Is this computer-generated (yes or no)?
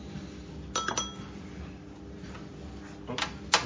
no